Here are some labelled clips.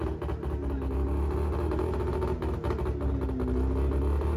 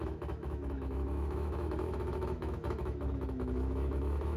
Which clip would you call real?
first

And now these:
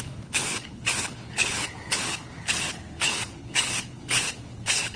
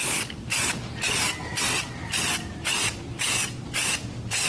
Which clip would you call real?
second